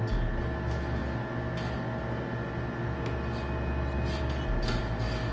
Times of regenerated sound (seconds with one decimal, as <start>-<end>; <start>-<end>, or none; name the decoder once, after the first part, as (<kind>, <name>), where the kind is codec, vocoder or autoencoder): none